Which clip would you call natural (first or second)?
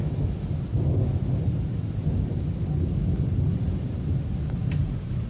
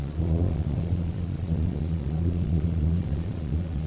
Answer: first